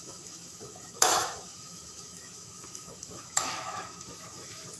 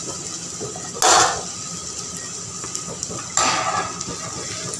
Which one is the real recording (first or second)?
second